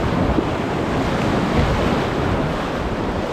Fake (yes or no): no